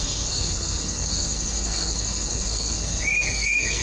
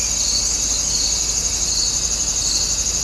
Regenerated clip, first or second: first